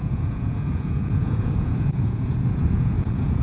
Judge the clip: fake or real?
fake